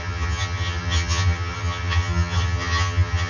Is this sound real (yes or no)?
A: no